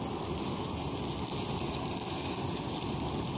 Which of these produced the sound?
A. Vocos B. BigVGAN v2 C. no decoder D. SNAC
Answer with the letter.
C